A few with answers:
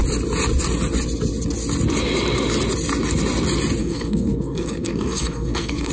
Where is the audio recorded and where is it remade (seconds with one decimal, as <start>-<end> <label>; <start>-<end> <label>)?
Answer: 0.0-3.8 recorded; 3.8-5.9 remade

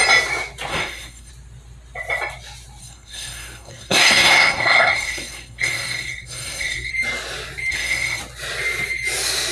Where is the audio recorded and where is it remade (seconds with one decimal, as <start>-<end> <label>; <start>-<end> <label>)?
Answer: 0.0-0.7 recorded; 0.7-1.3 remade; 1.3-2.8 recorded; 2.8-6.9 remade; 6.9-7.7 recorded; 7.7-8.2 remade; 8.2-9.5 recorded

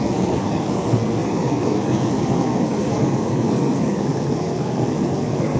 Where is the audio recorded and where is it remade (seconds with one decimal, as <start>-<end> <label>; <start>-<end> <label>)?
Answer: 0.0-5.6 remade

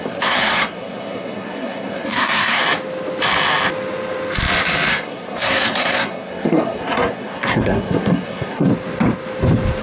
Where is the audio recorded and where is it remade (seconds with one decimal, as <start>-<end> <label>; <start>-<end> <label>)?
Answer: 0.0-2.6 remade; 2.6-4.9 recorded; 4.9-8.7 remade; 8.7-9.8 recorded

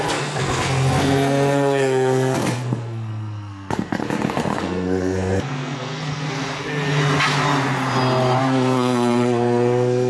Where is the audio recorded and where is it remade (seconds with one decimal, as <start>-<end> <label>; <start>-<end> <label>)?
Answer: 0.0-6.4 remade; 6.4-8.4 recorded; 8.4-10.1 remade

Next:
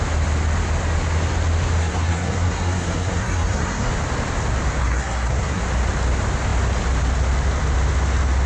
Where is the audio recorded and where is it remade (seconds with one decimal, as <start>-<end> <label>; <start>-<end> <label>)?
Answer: 0.0-1.8 recorded; 1.8-3.9 remade; 3.9-4.8 recorded; 4.8-5.6 remade; 5.6-8.5 recorded

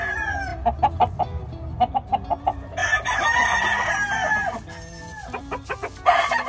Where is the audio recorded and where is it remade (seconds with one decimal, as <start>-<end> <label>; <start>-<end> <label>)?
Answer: 0.0-6.5 recorded

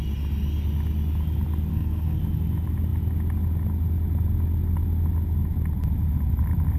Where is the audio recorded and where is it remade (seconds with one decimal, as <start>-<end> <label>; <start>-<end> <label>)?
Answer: 0.0-1.7 recorded; 1.7-2.2 remade; 2.2-6.8 recorded